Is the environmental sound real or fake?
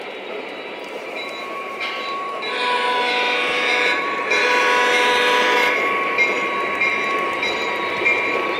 fake